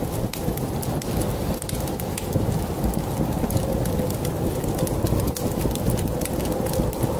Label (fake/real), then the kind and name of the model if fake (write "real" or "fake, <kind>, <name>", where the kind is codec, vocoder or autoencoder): real